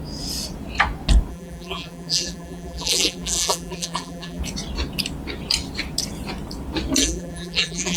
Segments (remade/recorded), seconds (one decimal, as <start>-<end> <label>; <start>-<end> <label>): 0.0-1.3 recorded; 1.3-4.4 remade; 4.4-7.0 recorded; 7.0-8.0 remade

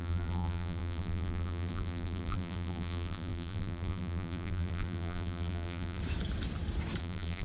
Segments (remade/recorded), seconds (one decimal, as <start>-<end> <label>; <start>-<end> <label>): 0.0-6.0 remade; 6.0-7.0 recorded; 7.0-7.4 remade

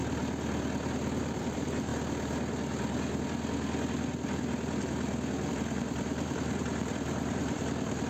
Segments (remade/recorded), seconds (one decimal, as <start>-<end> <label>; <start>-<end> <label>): 0.0-1.2 recorded; 1.2-1.9 remade; 1.9-5.5 recorded; 5.5-8.1 remade